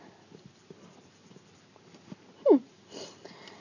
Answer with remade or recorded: recorded